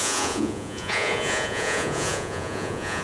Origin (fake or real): fake